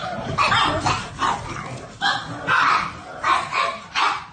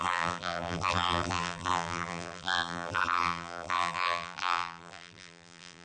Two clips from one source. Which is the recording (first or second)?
first